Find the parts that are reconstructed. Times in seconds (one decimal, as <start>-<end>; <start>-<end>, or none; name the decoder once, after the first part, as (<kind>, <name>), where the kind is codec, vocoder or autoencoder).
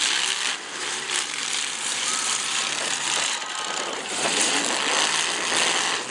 0.8-4.5 (vocoder, BigVGAN v2)